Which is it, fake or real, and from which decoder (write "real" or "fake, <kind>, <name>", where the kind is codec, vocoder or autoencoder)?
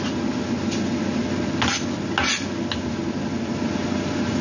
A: real